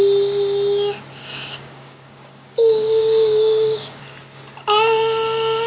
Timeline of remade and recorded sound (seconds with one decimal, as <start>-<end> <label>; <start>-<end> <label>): 0.0-1.2 recorded; 1.2-4.0 remade; 4.0-5.7 recorded